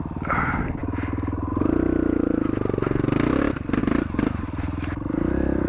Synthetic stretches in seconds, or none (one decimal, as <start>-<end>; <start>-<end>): 3.8-5.7